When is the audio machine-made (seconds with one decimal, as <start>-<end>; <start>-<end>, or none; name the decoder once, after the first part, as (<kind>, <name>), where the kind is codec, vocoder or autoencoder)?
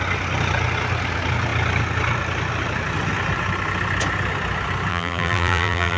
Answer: 4.9-6.0 (vocoder, BigVGAN v2)